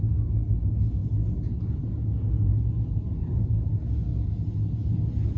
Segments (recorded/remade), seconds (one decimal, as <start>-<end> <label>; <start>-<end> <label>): 0.0-1.0 recorded; 1.0-3.5 remade; 3.5-4.1 recorded; 4.1-5.0 remade; 5.0-5.4 recorded